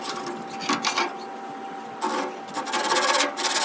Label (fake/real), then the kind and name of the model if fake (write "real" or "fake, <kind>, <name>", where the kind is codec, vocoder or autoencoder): real